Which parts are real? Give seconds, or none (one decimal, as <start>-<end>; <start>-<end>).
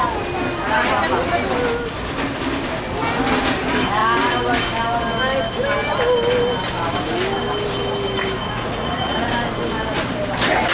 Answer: 0.0-8.4; 9.3-10.7